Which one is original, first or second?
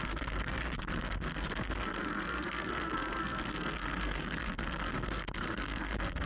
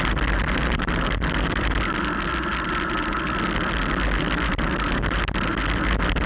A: second